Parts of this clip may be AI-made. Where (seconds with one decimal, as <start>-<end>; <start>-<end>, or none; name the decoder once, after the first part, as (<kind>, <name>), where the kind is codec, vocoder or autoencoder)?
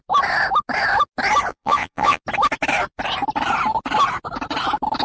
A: 1.5-2.2 (vocoder, Vocos)